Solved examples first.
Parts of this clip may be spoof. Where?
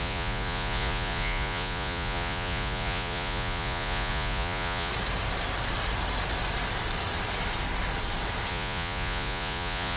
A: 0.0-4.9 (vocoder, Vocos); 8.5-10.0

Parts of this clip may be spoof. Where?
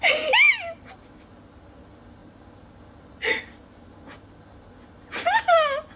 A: none